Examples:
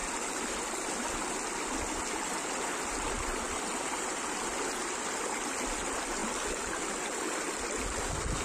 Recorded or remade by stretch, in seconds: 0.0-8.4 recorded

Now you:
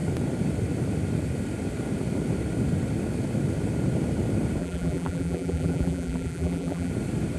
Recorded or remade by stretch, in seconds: 0.0-4.6 recorded; 4.6-6.9 remade; 6.9-7.4 recorded